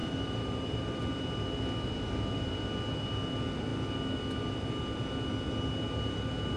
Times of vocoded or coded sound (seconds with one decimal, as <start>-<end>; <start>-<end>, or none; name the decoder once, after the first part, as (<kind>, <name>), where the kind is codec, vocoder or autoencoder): 0.0-1.0 (vocoder, BigVGAN v2)